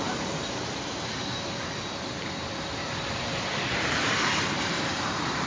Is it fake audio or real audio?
fake